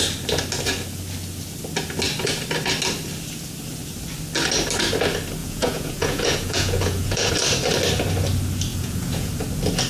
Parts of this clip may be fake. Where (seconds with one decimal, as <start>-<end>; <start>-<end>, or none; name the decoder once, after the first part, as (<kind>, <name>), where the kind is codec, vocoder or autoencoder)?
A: 5.4-7.3 (vocoder, Vocos); 8.7-9.3